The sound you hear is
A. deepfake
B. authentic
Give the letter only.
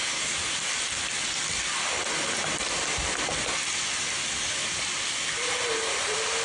B